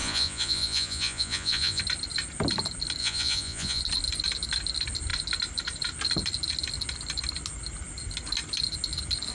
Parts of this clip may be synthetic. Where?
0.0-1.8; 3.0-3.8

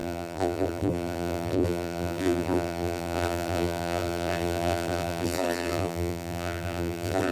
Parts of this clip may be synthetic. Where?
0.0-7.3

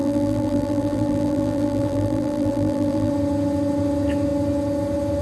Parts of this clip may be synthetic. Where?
0.0-3.1

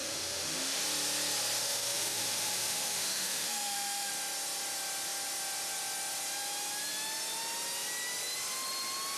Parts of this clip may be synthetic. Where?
0.0-0.8; 1.6-4.1

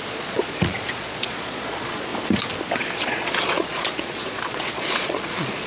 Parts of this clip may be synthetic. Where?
0.0-2.1; 2.8-5.7

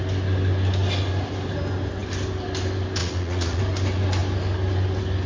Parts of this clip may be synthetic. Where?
3.0-3.6

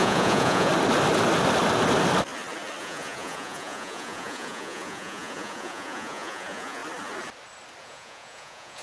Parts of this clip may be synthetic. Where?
0.0-0.7; 2.8-6.8; 7.8-8.8

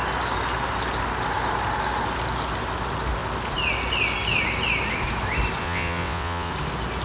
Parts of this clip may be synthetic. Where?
5.6-6.5